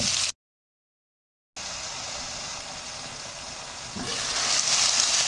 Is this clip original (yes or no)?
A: yes